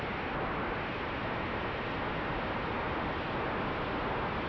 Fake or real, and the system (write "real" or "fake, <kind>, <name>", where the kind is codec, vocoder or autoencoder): real